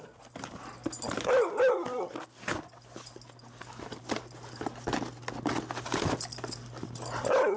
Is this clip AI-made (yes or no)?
no